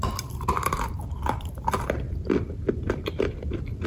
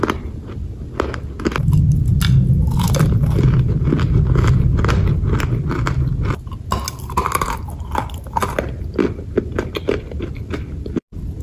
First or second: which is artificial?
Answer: first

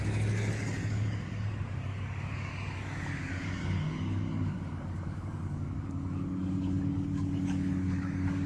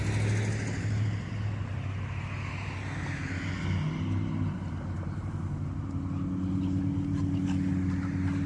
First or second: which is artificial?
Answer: first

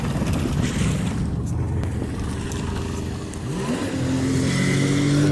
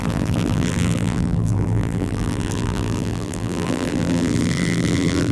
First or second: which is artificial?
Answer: second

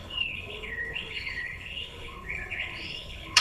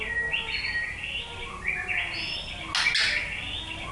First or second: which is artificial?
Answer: first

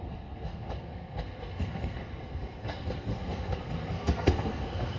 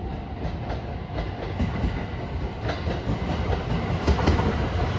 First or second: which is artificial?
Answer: first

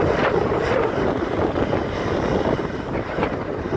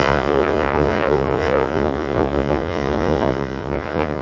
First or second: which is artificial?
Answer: second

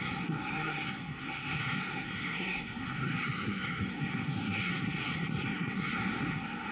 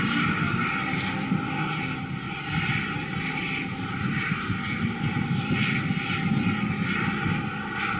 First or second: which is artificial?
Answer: first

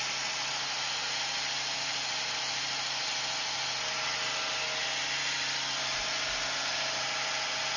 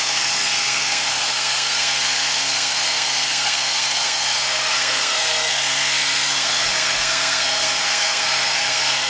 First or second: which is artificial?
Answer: second